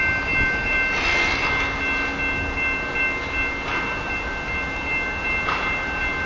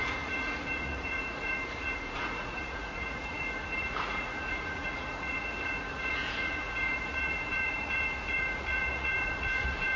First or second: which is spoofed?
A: second